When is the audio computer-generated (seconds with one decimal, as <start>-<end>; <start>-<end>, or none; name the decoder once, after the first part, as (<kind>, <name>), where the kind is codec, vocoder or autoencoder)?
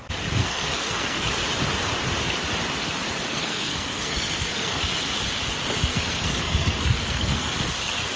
0.4-1.3 (codec, SNAC); 3.3-4.8; 5.9-7.5